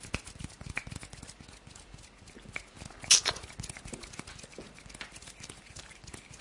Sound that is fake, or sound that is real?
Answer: real